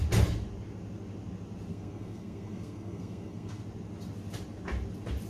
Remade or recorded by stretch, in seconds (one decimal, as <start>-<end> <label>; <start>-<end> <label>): 0.0-1.7 recorded; 1.7-3.6 remade; 3.6-5.3 recorded